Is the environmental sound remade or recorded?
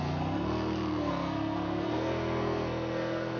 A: remade